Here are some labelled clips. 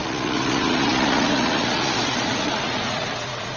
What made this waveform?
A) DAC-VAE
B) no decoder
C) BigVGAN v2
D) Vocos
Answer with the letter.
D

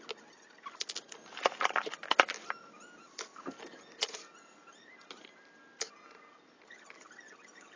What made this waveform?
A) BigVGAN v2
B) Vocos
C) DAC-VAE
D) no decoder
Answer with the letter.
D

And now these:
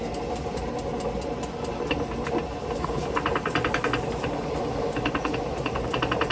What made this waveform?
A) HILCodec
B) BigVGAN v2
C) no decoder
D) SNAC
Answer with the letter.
C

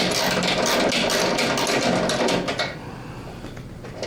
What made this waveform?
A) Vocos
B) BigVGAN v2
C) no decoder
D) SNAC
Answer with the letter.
C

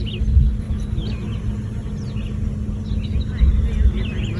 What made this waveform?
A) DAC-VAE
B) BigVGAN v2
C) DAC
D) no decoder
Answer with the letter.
D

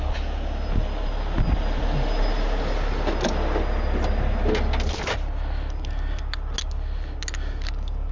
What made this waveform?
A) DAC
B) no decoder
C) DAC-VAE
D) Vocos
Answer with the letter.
B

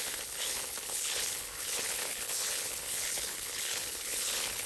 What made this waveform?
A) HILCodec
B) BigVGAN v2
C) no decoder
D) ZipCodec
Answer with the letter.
A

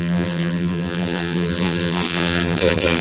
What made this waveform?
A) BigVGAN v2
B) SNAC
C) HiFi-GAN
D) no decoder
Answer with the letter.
A